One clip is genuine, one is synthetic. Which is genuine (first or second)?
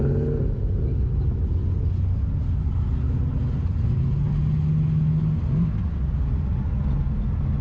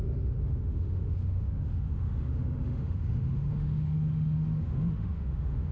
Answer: first